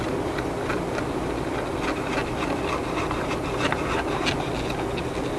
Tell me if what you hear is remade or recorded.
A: recorded